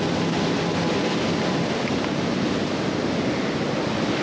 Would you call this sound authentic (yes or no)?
yes